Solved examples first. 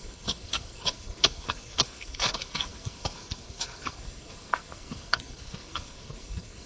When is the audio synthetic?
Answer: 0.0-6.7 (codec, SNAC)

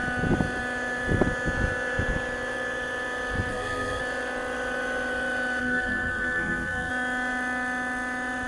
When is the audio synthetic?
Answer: 3.5-4.0 (codec, SNAC); 5.6-6.9

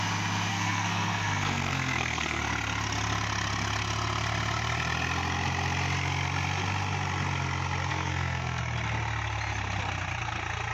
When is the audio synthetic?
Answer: 0.5-2.4 (codec, SNAC); 7.9-8.6